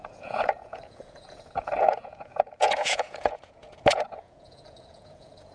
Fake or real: fake